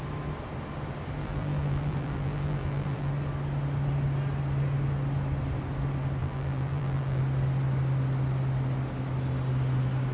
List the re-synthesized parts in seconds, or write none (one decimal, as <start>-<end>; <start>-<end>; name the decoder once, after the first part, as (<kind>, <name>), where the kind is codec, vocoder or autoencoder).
1.2-3.1 (vocoder, BigVGAN v2); 6.2-7.2